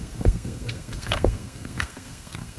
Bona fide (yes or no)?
no